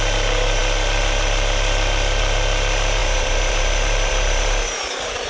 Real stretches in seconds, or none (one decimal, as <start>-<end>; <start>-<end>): 0.0-3.0